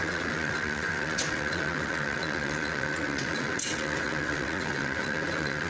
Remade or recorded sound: remade